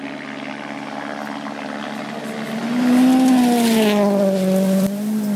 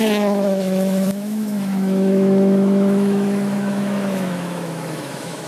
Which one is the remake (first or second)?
second